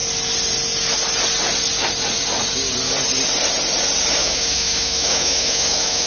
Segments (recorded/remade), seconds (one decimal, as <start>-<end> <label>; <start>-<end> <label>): 0.0-4.2 recorded; 4.2-6.1 remade